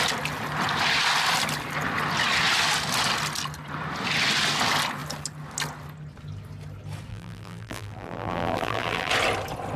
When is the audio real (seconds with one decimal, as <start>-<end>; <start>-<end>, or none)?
0.0-7.1; 9.1-9.8